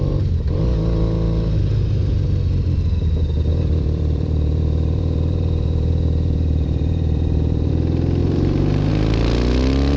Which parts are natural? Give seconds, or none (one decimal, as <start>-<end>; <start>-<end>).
0.0-3.5; 7.7-8.2; 8.9-10.0